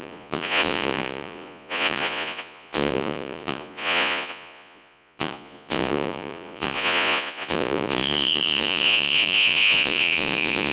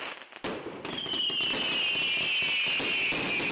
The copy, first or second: first